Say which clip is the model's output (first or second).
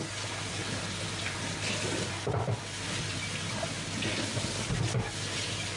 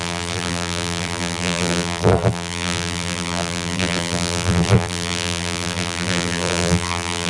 second